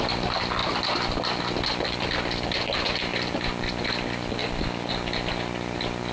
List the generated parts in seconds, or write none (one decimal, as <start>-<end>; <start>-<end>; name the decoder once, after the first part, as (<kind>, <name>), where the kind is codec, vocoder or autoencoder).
0.6-1.5 (vocoder, BigVGAN v2); 3.1-3.7; 4.4-4.9